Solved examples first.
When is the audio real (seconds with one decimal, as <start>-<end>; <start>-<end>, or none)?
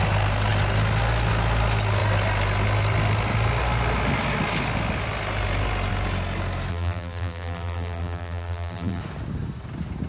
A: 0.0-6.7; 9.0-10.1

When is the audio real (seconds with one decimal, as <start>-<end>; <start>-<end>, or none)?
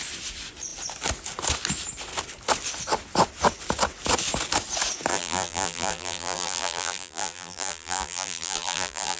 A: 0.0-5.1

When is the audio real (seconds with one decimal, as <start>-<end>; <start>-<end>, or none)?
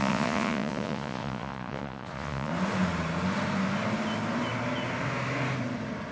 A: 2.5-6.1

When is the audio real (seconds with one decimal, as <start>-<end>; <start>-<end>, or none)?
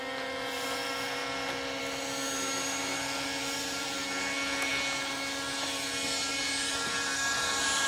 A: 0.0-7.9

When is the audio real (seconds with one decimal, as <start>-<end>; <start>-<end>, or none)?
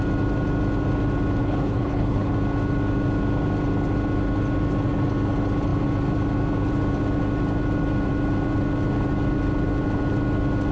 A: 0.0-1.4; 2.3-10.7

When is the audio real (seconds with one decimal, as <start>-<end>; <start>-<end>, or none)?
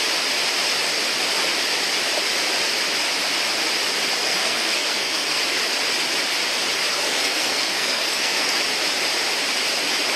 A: 0.0-4.2; 5.4-6.9; 8.6-10.2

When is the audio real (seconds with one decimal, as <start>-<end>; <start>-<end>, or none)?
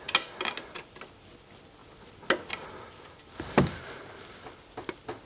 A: 0.0-5.3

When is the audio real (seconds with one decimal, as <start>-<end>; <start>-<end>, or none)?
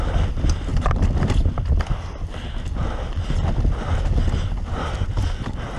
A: 0.0-5.8